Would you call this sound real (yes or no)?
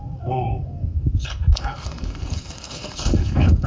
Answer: no